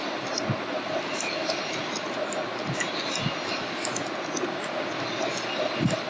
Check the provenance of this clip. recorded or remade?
recorded